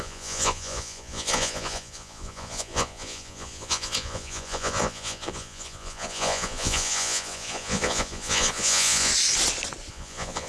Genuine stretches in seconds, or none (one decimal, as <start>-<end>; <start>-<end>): 9.1-9.9